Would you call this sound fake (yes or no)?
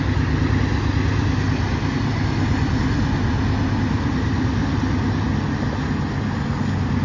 no